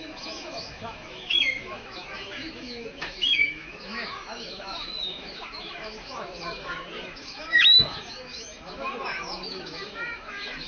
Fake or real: fake